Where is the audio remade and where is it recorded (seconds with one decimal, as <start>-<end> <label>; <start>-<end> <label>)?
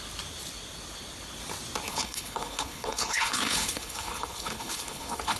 0.0-1.9 recorded; 1.9-5.4 remade